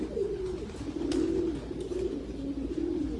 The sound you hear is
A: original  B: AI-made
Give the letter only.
A